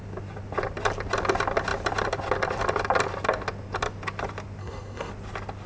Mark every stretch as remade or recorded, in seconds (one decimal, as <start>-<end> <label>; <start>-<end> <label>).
0.0-4.6 recorded; 4.6-5.1 remade; 5.1-5.7 recorded